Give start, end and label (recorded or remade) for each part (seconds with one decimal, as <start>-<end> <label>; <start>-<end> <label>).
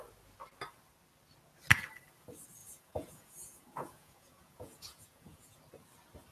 0.0-2.6 recorded; 2.6-5.6 remade; 5.6-6.3 recorded